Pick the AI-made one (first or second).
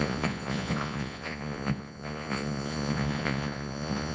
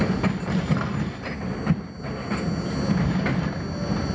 first